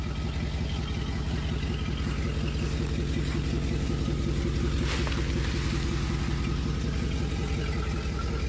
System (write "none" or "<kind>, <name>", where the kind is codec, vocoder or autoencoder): none